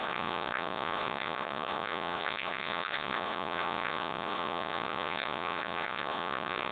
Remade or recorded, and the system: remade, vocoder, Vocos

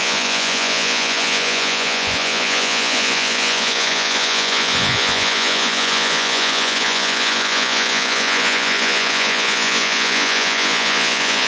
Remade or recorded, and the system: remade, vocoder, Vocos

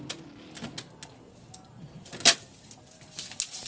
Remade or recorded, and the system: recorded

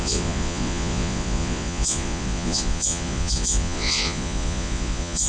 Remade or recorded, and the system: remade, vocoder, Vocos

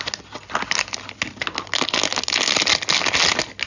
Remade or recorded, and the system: recorded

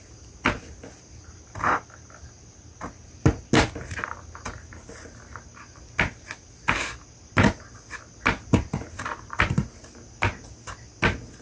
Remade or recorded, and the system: recorded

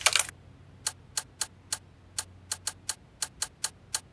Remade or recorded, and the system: recorded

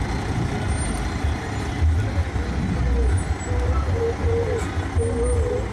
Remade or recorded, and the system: recorded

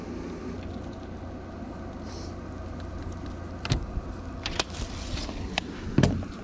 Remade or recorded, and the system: recorded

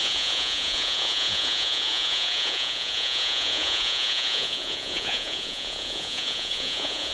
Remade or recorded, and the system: remade, vocoder, Vocos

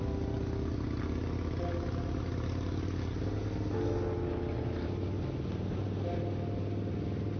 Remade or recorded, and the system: recorded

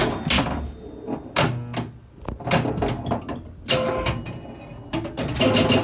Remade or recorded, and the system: recorded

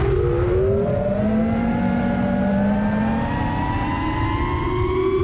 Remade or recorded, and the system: recorded